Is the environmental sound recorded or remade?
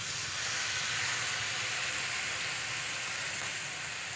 recorded